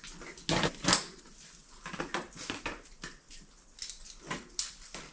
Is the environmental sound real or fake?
real